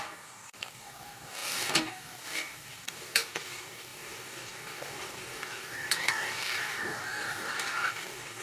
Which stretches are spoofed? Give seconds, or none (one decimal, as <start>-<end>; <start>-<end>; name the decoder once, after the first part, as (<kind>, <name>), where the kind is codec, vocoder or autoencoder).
0.0-8.4 (codec, DAC)